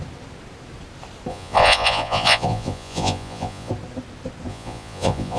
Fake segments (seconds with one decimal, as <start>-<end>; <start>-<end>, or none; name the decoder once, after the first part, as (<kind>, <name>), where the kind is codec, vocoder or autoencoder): 1.3-3.7 (vocoder, Vocos); 4.5-5.4